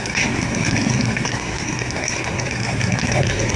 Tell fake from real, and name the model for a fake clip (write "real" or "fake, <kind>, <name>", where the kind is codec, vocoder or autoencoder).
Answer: fake, codec, SNAC